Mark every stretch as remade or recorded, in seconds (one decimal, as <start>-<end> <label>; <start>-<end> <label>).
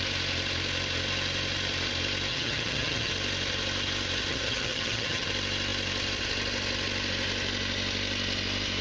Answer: 0.0-2.3 recorded; 2.3-3.1 remade; 3.1-4.3 recorded; 4.3-5.3 remade; 5.3-8.8 recorded